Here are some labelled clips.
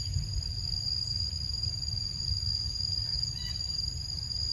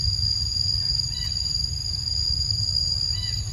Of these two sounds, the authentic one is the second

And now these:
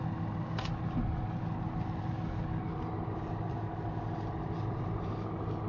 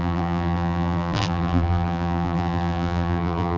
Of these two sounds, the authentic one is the first